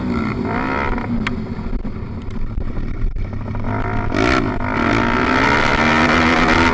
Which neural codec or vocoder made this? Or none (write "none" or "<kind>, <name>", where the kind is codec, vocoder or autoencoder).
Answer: none